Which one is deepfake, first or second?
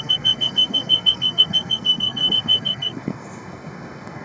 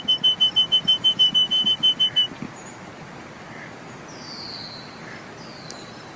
first